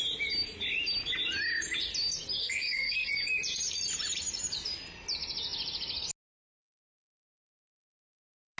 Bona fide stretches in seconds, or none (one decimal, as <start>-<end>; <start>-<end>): 0.0-2.4; 3.1-8.6